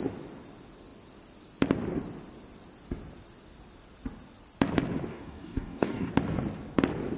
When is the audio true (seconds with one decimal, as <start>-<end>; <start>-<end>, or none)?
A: 0.0-5.1; 6.1-7.2